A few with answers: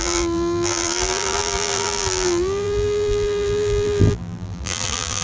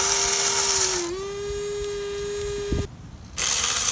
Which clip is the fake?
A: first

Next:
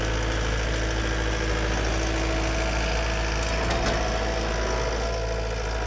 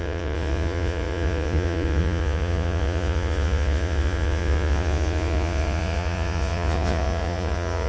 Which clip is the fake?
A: second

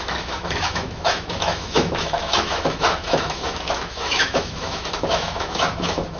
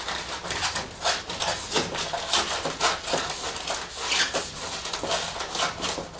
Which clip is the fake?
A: first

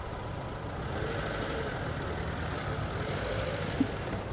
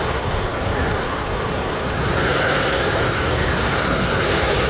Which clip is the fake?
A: second